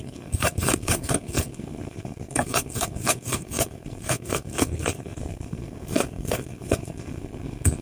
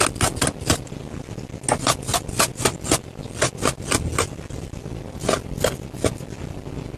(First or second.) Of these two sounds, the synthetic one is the first